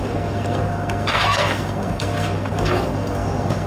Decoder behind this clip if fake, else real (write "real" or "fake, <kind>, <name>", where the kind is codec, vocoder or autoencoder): fake, codec, SNAC